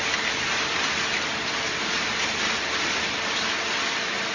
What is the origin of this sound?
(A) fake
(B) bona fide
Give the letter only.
B